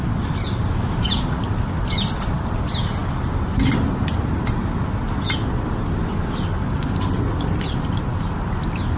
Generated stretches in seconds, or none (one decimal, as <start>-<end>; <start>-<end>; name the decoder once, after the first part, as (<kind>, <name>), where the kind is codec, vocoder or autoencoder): none